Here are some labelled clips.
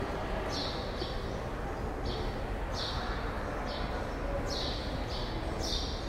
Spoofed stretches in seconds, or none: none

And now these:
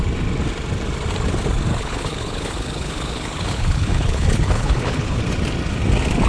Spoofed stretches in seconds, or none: 1.7-5.2

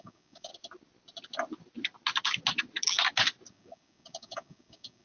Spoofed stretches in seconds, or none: 0.0-0.5; 3.5-5.0